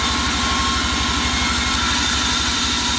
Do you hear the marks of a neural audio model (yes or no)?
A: no